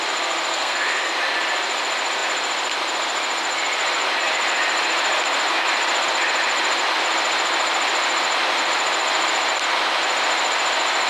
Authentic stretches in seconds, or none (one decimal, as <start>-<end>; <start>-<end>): 0.0-0.5; 1.1-11.1